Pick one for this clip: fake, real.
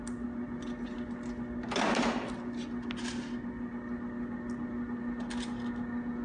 real